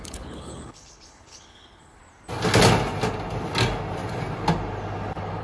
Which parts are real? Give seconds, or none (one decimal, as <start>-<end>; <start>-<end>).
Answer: 2.0-5.4